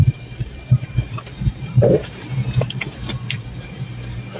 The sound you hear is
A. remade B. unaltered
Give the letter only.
A